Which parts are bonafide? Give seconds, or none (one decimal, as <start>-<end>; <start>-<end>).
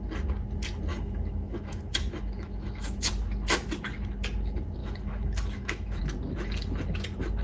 0.0-0.9; 3.1-4.8; 6.0-7.4